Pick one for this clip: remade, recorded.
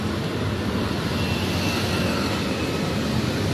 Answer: recorded